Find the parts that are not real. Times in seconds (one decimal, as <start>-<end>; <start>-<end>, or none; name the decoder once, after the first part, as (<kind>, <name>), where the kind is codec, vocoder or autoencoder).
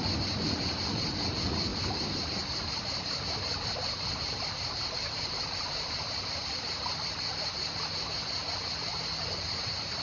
1.7-6.7 (vocoder, BigVGAN v2)